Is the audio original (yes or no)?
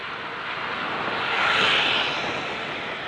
yes